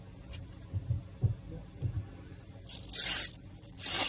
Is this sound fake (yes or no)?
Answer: no